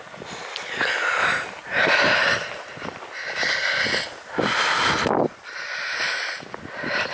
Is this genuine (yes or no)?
yes